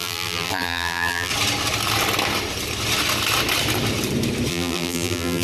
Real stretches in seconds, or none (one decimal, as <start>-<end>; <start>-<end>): 1.3-4.5